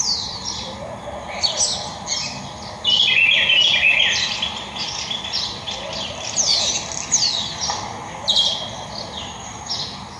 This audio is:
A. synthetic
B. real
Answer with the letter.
B